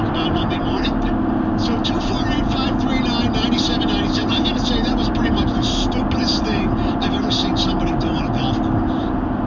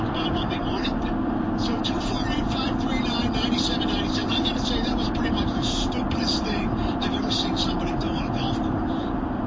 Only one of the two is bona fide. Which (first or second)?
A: first